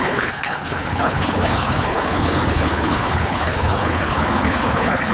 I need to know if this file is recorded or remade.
remade